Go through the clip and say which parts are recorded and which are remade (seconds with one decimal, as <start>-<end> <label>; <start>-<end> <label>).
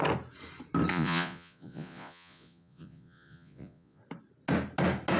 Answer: 0.0-0.9 recorded; 0.9-4.0 remade; 4.0-5.2 recorded